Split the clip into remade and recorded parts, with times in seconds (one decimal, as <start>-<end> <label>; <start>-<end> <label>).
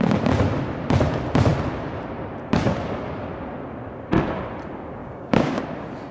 0.0-5.0 recorded; 5.0-5.6 remade; 5.6-6.1 recorded